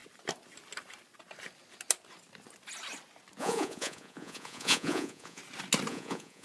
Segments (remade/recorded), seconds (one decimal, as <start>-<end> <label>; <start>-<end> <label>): 0.0-3.4 recorded; 3.4-5.4 remade; 5.4-5.9 recorded; 5.9-6.4 remade